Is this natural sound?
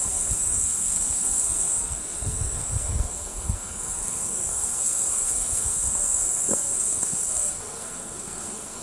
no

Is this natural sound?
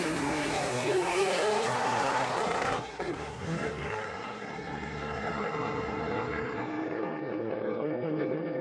no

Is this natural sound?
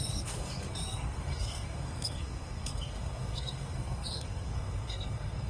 no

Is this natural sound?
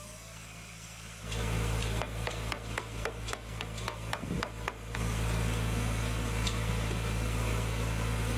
no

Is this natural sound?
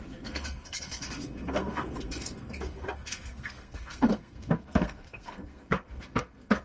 no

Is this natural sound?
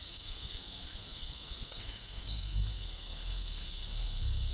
no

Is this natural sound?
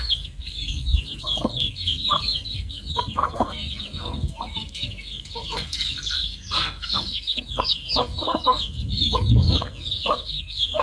no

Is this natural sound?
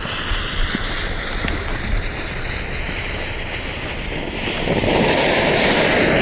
yes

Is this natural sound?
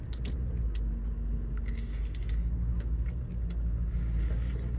yes